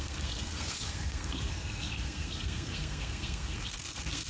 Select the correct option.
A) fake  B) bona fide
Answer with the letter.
A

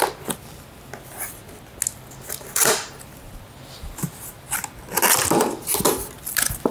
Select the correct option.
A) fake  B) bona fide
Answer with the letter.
B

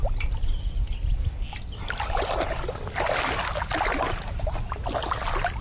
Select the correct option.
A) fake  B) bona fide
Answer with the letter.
B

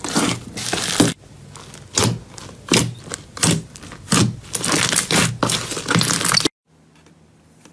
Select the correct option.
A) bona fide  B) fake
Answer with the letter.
A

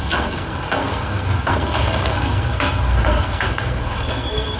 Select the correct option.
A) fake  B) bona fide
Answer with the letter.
A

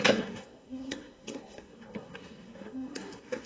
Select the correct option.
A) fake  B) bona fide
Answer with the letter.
A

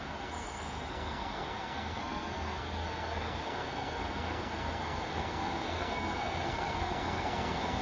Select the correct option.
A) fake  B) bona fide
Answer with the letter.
A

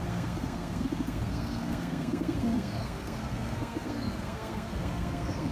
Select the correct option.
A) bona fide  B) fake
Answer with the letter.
B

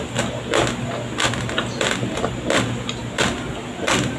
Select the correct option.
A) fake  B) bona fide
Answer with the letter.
B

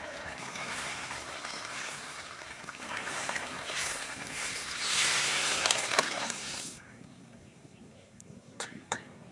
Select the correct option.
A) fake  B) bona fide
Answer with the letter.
A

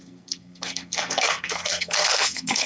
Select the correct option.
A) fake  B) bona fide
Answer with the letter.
A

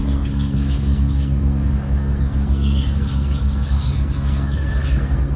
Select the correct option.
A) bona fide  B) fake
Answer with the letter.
B